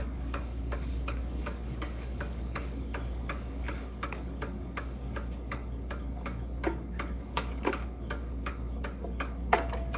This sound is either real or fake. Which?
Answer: fake